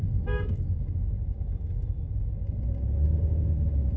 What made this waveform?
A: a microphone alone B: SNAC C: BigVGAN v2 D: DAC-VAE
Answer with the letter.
D